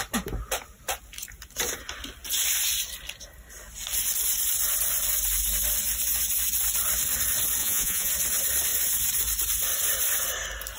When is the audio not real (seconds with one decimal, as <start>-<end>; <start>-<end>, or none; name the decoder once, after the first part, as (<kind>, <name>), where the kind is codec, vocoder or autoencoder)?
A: 7.6-8.1 (vocoder, Vocos)